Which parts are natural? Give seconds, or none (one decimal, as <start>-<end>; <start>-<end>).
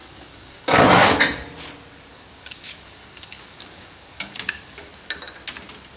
1.2-2.1; 4.9-6.0